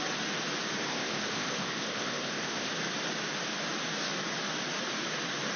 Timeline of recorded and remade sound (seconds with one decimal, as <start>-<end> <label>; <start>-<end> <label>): 0.0-0.8 recorded; 0.8-2.7 remade; 2.7-5.6 recorded